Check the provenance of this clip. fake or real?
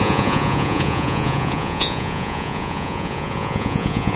fake